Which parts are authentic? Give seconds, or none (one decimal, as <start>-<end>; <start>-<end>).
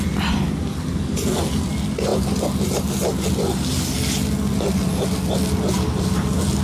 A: 0.0-6.6